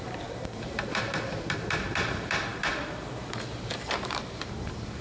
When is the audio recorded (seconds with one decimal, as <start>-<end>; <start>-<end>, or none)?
none